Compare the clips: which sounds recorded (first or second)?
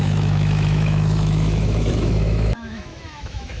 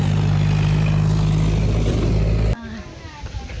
second